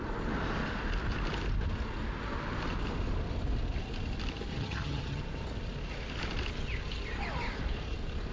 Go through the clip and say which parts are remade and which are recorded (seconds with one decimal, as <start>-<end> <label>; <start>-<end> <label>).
0.0-4.5 recorded; 4.5-5.2 remade; 5.2-8.3 recorded